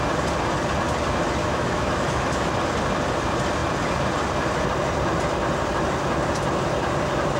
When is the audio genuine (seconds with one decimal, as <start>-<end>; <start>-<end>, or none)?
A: 0.0-1.4; 2.5-7.4